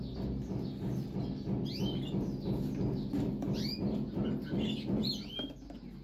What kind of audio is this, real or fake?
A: real